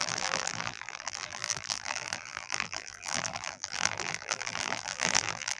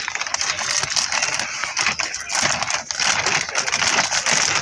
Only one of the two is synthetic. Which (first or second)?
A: first